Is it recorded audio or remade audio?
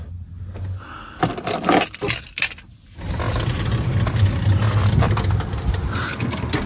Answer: recorded